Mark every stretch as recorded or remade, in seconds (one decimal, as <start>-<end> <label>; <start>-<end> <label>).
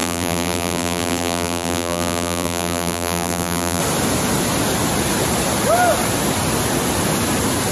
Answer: 0.0-3.8 remade; 3.8-7.7 recorded